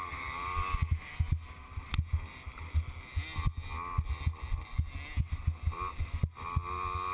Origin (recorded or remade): recorded